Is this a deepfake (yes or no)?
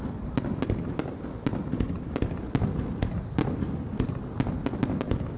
no